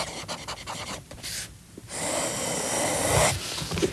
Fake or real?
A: real